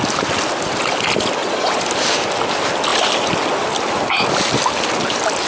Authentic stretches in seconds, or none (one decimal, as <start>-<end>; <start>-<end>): 0.0-1.4; 1.9-5.5